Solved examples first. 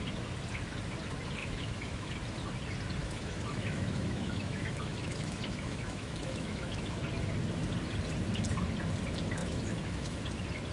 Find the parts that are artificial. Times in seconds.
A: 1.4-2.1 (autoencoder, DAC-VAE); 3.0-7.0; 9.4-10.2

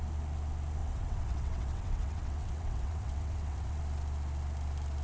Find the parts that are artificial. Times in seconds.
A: 0.8-3.8 (vocoder, WaveNeXt)

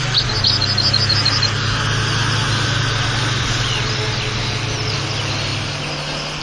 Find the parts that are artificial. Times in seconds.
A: none

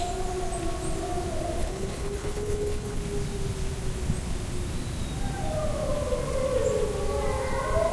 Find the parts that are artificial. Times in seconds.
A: 1.6-3.0 (codec, HILCodec)

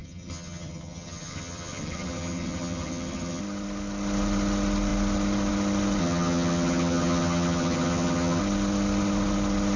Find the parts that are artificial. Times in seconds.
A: 0.0-3.4 (vocoder, HiFi-GAN); 6.0-8.4

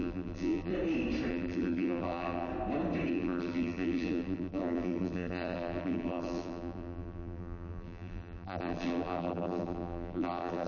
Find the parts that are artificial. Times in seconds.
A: 0.0-0.7 (vocoder, BigVGAN v2); 1.3-2.5; 3.1-10.7

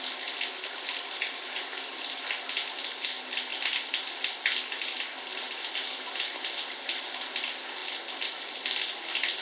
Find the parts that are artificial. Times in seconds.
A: none